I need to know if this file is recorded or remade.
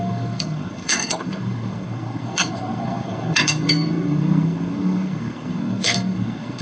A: remade